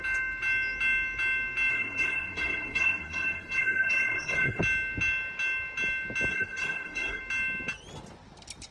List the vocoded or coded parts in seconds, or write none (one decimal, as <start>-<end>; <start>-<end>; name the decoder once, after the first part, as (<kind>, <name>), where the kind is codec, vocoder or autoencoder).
1.7-4.6 (codec, SNAC); 6.3-7.2